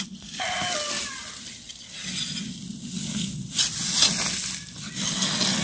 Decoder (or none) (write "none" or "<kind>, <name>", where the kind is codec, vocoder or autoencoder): none